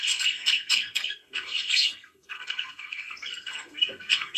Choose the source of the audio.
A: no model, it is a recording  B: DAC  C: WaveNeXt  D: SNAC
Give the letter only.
D